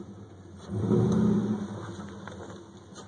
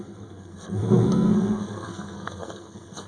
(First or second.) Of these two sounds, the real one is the first